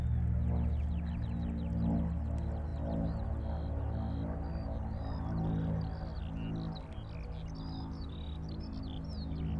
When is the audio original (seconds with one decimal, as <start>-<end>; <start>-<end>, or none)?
0.0-9.6